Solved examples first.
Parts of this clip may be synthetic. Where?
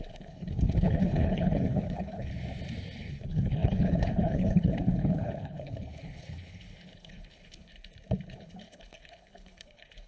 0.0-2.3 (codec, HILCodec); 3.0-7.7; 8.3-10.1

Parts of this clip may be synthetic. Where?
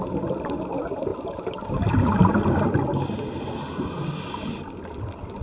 none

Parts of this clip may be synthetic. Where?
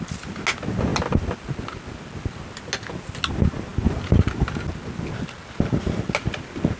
none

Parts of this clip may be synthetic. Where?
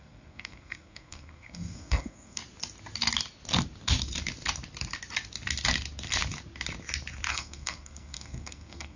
0.0-2.4 (codec, SNAC); 7.3-9.0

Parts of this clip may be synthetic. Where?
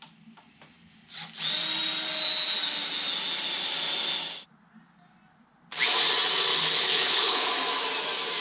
6.5-7.5 (codec, HILCodec)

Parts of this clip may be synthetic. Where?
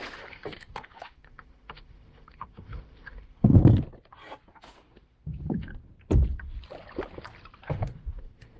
0.0-3.6 (autoencoder, DAC-VAE); 4.5-5.7; 7.7-8.6